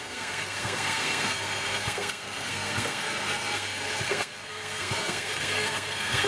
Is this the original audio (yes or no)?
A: no